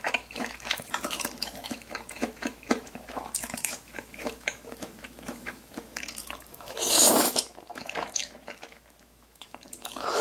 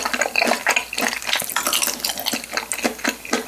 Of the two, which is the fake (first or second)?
first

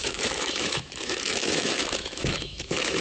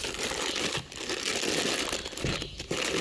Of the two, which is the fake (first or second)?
first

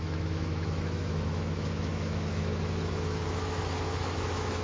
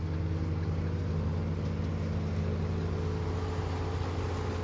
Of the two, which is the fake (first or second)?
first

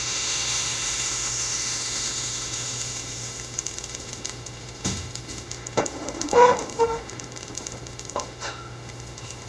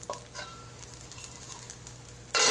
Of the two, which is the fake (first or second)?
first